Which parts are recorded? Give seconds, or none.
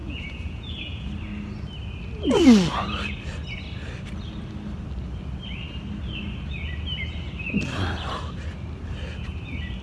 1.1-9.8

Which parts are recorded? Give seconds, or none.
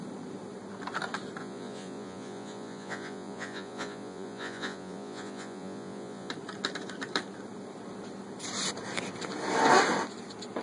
0.0-1.4; 6.3-10.6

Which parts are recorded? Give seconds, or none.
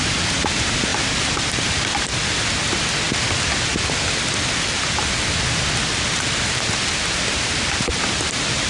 2.1-6.1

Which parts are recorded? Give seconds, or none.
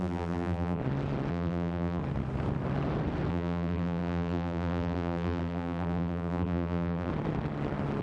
0.8-1.3; 2.0-3.3; 7.1-8.0